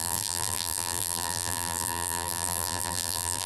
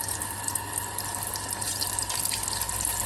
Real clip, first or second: second